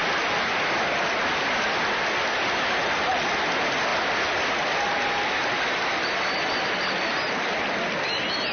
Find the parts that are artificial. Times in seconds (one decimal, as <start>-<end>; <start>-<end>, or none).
none